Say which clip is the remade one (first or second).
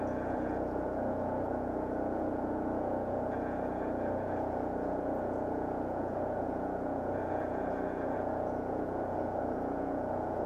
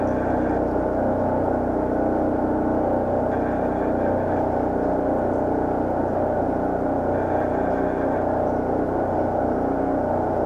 first